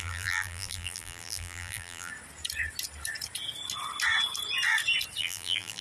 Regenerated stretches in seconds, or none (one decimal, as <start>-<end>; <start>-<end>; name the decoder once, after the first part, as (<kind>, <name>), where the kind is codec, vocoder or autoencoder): 0.0-2.1 (vocoder, BigVGAN v2); 5.2-5.8